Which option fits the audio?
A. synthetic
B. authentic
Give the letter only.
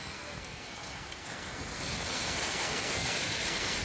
A